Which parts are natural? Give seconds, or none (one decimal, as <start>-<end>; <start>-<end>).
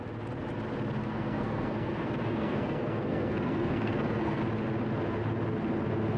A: 0.0-1.0; 4.4-6.2